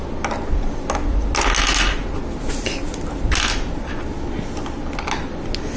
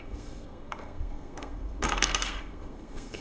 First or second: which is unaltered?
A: first